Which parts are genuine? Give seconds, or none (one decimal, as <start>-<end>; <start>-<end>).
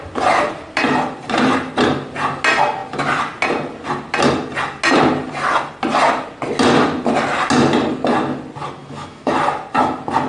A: 0.0-8.8; 9.3-10.3